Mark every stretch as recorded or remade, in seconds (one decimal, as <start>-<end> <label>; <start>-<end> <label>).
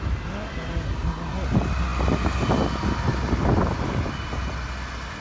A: 0.0-5.2 recorded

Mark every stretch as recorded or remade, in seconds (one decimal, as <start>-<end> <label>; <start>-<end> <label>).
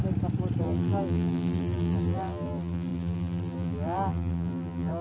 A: 0.0-0.6 recorded; 0.6-5.0 remade